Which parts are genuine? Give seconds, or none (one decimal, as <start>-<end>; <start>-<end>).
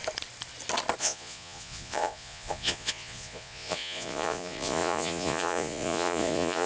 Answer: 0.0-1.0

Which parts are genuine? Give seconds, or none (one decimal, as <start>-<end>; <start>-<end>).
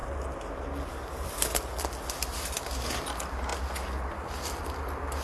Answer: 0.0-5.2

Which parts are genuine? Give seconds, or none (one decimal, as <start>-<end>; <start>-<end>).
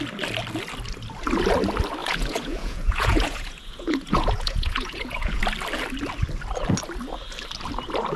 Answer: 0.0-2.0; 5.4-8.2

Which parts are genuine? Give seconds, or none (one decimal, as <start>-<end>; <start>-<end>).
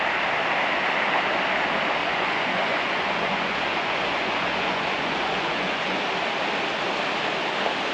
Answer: 0.0-2.0; 6.0-7.9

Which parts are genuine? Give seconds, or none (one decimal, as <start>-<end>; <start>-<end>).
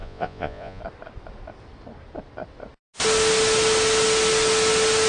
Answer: 0.8-5.1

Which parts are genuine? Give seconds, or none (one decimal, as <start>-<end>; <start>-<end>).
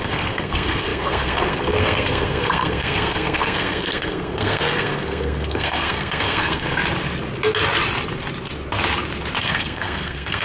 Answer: 6.8-9.4